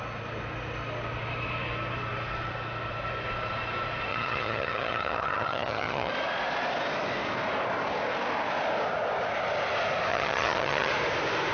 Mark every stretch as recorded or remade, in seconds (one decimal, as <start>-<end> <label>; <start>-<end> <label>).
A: 0.0-4.1 recorded; 4.1-6.1 remade; 6.1-10.1 recorded; 10.1-10.9 remade; 10.9-11.5 recorded